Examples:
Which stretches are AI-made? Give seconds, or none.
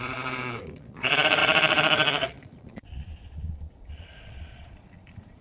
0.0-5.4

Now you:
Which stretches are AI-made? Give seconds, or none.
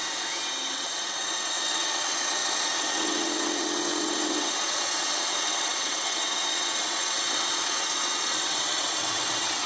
0.7-9.7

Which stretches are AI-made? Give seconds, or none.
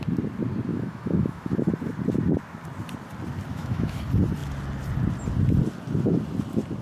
0.7-1.7; 3.5-4.0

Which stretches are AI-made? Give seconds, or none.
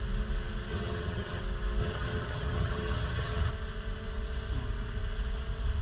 0.7-1.4; 1.8-3.5